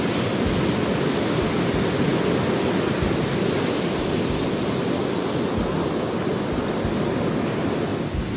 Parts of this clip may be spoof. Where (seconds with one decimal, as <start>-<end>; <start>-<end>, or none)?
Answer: none